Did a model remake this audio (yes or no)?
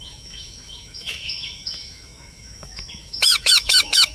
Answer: yes